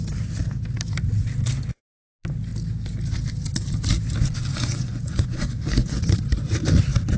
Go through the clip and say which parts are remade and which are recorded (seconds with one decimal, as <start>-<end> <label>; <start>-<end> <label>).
0.0-4.5 recorded; 4.5-6.2 remade; 6.2-7.2 recorded